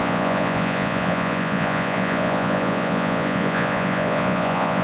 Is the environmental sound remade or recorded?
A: remade